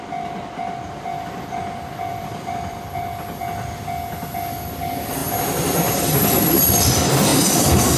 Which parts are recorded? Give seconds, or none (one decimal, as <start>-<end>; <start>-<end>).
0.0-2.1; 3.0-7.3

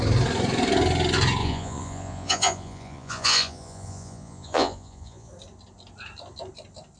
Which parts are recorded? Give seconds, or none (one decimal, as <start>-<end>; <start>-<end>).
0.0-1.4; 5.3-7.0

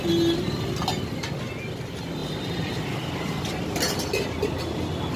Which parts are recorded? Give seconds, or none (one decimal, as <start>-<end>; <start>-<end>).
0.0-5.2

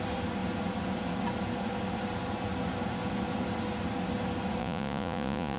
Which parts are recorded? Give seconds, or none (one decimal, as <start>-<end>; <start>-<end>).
0.0-4.6

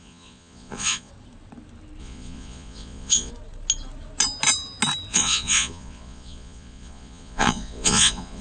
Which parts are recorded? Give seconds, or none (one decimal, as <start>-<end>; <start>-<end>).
1.1-2.0; 3.3-5.1